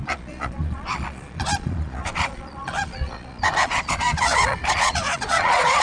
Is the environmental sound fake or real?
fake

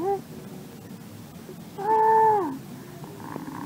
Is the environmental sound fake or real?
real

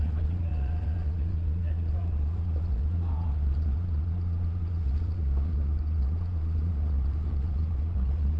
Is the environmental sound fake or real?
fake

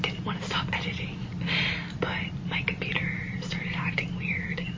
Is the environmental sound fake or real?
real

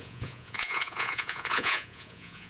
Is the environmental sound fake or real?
fake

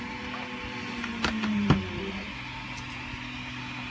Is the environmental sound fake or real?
real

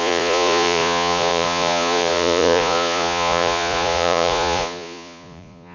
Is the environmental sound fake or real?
fake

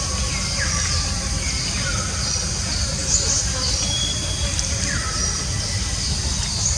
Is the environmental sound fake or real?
real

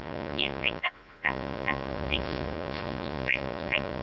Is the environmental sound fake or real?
fake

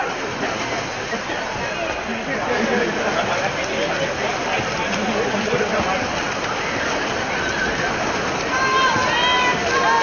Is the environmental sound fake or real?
real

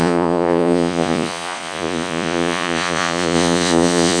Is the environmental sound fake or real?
fake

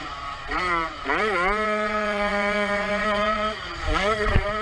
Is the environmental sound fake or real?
fake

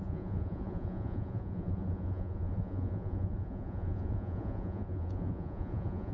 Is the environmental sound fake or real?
fake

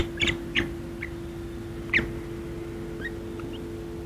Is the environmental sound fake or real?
real